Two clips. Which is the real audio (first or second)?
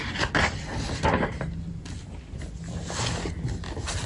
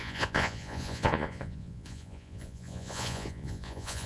first